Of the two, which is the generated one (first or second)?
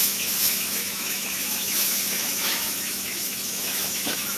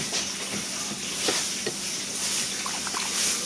first